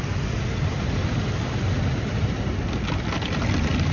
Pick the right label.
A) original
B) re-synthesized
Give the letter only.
A